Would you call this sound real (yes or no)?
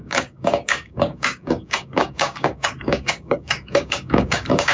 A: no